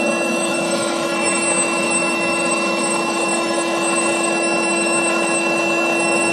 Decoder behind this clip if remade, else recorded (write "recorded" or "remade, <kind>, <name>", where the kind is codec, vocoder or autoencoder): remade, autoencoder, DAC-VAE